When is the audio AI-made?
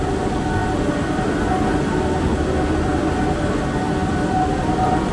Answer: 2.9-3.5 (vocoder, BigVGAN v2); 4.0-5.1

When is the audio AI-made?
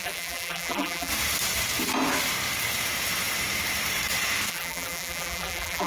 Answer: 0.0-1.1 (vocoder, BigVGAN v2); 4.5-5.9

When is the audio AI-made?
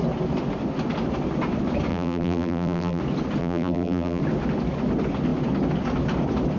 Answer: 1.9-3.0 (vocoder, BigVGAN v2); 3.4-4.2